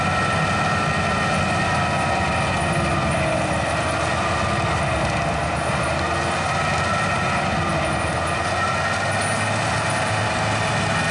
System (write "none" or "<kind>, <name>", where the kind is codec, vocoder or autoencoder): none